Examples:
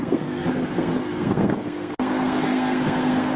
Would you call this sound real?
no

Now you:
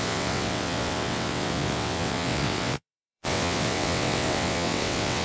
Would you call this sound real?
no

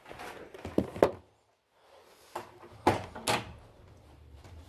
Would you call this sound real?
yes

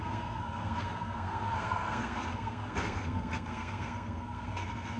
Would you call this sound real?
no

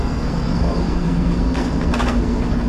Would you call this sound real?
no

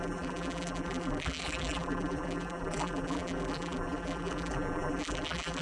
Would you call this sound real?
no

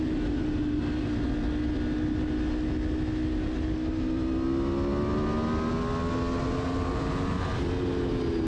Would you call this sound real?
yes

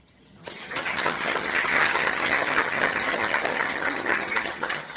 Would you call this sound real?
no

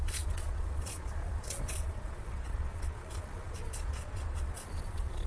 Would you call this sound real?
no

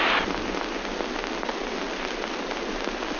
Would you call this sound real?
yes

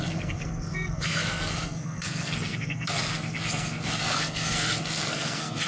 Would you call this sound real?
no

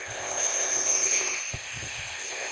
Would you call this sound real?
no